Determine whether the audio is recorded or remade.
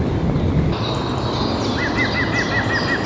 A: recorded